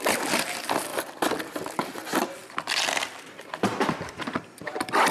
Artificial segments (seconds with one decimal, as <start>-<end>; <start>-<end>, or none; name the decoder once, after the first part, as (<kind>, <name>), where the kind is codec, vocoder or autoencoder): 2.4-5.1 (vocoder, BigVGAN v2)